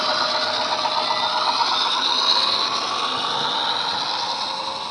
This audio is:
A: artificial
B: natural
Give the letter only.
B